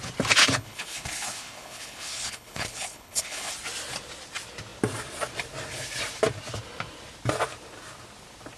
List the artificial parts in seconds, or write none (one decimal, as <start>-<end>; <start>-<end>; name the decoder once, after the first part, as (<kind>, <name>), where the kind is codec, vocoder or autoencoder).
0.4-3.5 (codec, HILCodec)